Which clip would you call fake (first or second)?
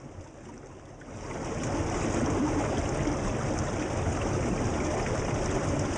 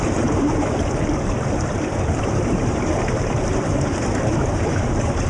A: second